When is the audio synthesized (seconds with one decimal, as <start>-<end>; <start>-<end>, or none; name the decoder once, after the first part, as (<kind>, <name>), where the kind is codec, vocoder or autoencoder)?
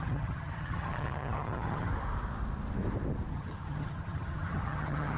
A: 0.0-1.9 (vocoder, HiFi-GAN); 3.3-5.2